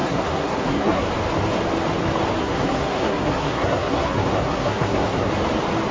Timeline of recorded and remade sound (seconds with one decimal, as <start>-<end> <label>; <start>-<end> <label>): 0.0-1.1 remade; 1.1-2.4 recorded; 2.4-5.3 remade; 5.3-5.9 recorded